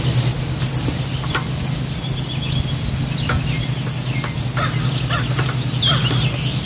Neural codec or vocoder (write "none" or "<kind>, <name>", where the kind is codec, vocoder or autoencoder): none